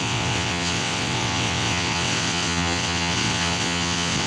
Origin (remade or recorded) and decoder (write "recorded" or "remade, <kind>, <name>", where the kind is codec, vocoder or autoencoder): remade, vocoder, WaveNeXt